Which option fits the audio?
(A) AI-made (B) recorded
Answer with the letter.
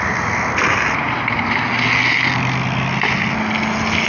B